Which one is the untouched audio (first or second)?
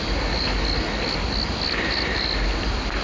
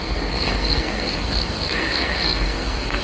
first